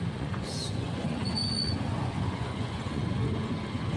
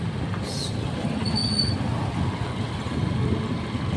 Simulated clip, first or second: first